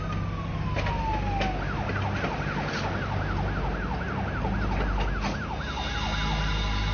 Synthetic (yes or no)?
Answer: no